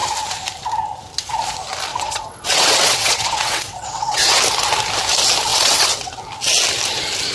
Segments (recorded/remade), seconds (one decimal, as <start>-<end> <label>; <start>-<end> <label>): 0.0-1.9 recorded; 1.9-4.4 remade; 4.4-5.5 recorded; 5.5-6.1 remade; 6.1-7.3 recorded